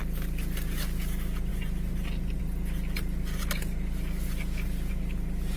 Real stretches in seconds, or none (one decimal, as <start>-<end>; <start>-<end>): 0.0-5.6